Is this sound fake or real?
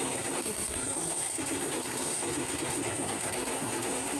fake